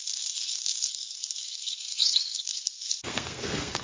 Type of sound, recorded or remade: remade